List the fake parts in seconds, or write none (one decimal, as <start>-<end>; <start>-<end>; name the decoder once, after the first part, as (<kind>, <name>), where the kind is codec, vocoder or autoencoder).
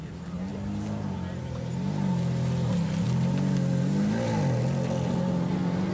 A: none